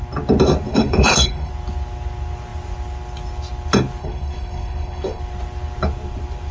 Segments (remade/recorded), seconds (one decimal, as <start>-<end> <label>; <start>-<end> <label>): 0.0-0.7 recorded; 0.7-1.5 remade; 1.5-4.0 recorded; 4.0-5.2 remade; 5.2-6.5 recorded